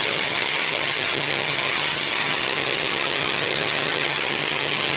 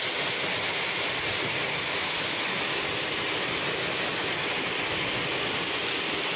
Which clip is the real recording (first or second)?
second